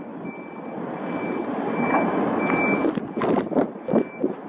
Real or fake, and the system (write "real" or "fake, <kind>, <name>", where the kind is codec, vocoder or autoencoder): real